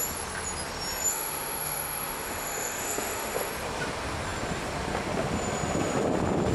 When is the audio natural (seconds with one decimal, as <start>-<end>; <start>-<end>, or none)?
0.0-1.1; 3.5-6.5